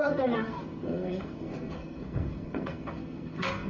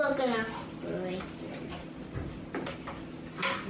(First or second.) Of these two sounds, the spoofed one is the first